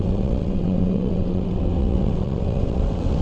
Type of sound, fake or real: fake